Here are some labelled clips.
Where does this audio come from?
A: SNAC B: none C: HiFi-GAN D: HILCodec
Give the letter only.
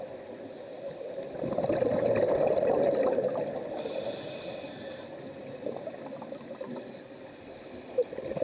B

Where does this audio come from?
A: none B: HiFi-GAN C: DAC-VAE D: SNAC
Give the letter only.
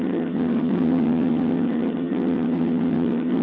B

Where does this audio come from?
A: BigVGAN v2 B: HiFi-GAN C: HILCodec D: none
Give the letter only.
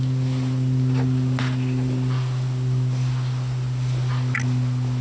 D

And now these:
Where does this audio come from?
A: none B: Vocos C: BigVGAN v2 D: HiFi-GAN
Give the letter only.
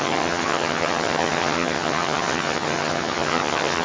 D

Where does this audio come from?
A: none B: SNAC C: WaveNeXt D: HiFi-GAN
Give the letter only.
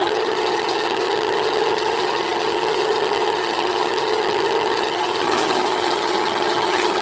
D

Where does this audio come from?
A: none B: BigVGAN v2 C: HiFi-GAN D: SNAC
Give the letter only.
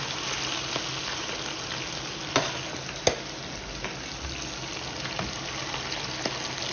A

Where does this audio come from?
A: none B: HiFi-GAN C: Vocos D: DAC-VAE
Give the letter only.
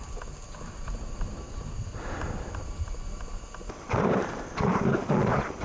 A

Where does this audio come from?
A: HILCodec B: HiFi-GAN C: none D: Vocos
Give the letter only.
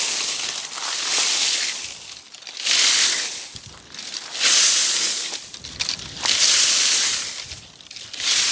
C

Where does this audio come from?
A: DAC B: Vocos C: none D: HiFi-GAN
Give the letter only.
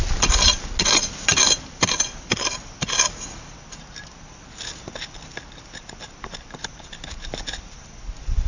C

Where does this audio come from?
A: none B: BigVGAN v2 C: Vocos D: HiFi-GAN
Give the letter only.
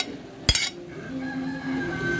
A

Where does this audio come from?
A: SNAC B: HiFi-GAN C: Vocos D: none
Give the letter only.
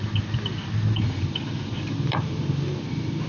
D